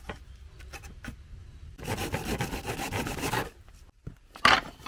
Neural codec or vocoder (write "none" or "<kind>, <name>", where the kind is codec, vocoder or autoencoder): none